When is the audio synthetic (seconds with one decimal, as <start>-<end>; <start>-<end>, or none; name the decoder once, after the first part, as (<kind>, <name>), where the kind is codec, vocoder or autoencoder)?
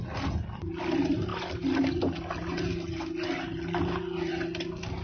none